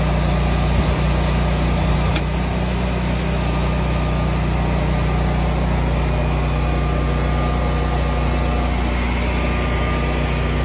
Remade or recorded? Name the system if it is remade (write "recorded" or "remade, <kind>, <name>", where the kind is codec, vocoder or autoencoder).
recorded